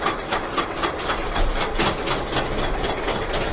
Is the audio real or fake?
real